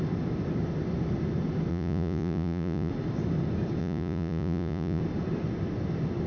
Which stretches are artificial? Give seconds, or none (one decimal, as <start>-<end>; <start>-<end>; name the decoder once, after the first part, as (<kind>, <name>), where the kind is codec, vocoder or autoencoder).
1.7-2.9 (vocoder, Vocos); 3.8-5.0